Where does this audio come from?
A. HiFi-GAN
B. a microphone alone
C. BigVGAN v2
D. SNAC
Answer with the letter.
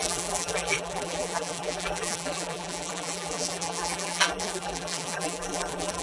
C